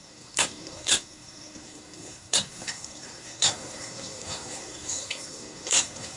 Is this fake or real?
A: fake